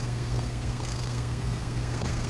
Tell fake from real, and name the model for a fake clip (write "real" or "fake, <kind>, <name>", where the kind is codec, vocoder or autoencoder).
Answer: fake, codec, SNAC